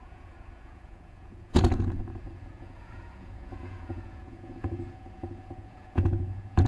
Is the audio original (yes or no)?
no